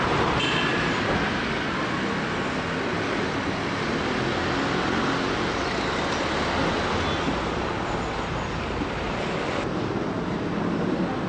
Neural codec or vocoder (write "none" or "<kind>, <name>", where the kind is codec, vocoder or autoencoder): none